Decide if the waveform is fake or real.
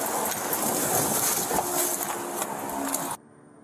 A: real